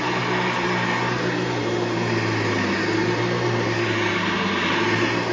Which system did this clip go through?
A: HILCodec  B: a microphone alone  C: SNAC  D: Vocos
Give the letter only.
B